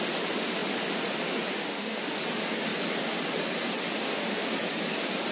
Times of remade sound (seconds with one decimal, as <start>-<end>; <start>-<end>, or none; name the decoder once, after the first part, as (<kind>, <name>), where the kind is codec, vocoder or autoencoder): 1.7-2.2 (autoencoder, DAC-VAE); 3.9-4.5

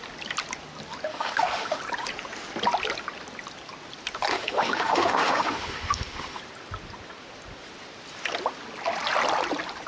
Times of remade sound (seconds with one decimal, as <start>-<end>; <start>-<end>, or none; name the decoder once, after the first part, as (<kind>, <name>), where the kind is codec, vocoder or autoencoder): 1.1-1.8 (autoencoder, DAC-VAE); 4.3-6.4

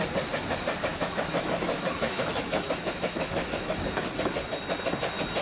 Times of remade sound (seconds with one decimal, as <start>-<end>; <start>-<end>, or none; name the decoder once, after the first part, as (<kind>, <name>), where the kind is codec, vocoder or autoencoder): 0.9-4.1 (autoencoder, DAC-VAE)

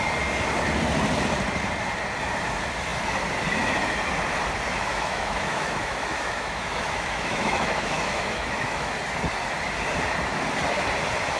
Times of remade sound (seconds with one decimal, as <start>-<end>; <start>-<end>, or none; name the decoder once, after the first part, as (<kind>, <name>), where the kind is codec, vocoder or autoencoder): 4.9-9.0 (autoencoder, DAC-VAE)

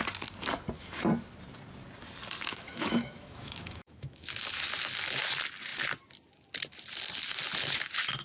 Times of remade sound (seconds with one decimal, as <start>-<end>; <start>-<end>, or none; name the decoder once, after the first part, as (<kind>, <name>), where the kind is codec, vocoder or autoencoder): 2.5-4.3 (autoencoder, DAC-VAE)

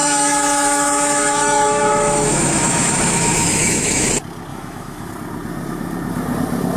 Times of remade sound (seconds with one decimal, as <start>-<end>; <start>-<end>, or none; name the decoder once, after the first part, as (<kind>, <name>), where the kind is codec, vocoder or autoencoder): 0.0-4.1 (autoencoder, DAC-VAE); 4.5-5.1

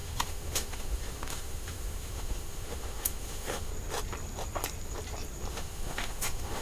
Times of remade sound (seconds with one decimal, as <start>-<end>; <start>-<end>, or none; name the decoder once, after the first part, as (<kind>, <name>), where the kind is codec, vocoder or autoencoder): 0.0-3.7 (autoencoder, DAC-VAE); 5.5-6.6